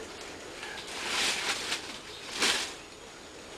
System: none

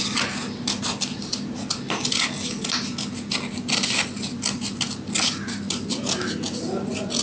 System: none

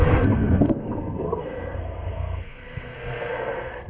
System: codec, SNAC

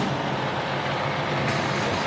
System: none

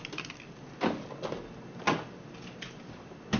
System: none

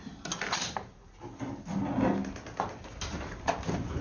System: none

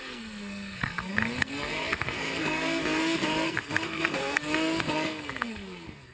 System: codec, SNAC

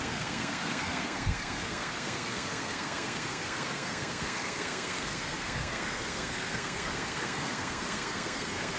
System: codec, SNAC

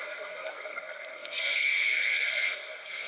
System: codec, SNAC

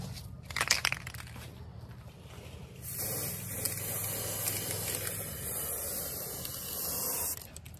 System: none